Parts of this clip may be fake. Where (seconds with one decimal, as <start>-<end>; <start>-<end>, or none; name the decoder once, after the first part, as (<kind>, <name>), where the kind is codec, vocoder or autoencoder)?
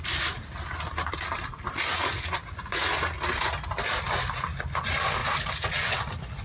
1.9-3.5 (vocoder, Vocos); 5.2-6.0